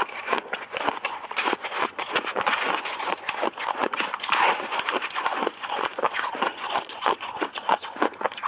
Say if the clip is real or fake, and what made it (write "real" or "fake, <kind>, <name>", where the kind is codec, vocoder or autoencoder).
fake, vocoder, Vocos